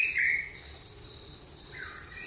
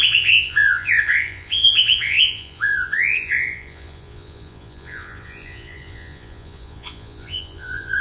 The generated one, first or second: second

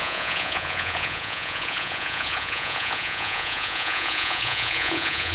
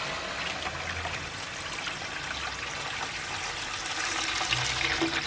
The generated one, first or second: first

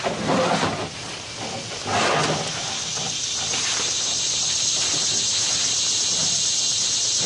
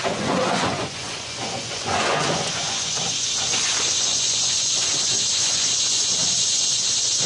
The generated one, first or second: second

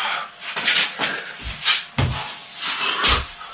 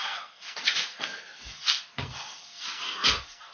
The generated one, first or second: second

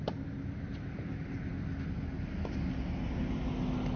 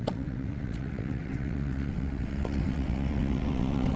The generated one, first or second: second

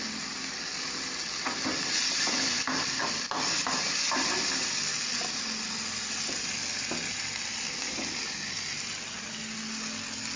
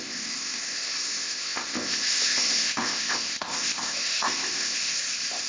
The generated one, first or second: second